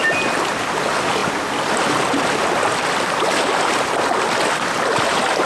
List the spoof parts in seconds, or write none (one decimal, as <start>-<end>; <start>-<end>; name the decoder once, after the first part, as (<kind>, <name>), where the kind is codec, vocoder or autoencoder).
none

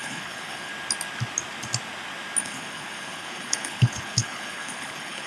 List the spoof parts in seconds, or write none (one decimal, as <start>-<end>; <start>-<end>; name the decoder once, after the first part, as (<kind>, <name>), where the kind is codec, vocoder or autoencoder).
0.0-0.7 (codec, HILCodec); 2.4-5.3

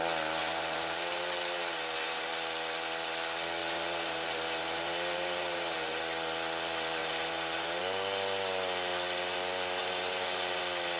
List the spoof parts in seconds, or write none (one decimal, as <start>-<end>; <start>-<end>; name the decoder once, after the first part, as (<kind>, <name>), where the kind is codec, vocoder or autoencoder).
0.4-2.3 (vocoder, BigVGAN v2); 3.6-6.0; 7.0-7.8; 9.8-10.6

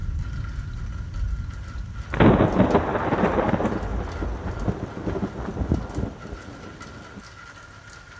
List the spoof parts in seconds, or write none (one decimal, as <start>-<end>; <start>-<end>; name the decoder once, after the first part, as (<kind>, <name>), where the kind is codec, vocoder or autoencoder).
3.2-3.9 (vocoder, BigVGAN v2)